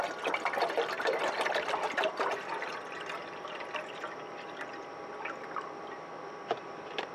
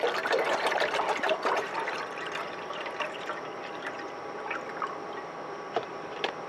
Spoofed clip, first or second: second